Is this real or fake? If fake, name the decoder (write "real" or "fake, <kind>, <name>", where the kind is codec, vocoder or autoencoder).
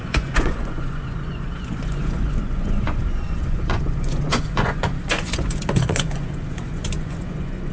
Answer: fake, vocoder, Vocos